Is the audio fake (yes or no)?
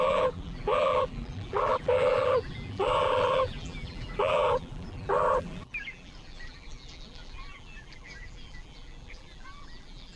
yes